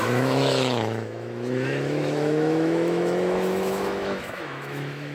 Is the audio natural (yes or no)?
no